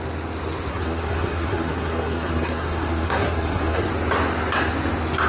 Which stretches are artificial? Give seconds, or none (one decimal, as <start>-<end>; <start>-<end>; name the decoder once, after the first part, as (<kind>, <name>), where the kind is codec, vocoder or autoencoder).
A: 0.7-3.9 (codec, SNAC)